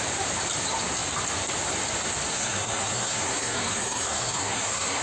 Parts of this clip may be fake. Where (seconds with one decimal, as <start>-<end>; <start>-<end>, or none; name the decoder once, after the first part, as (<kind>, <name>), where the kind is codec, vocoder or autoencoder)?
2.3-5.0 (codec, SNAC)